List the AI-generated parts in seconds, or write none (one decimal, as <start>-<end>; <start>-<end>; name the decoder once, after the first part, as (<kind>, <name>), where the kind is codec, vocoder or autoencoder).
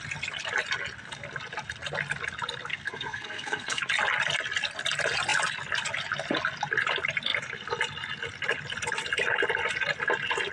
2.7-3.8 (codec, SNAC)